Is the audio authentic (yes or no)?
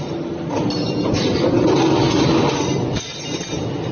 yes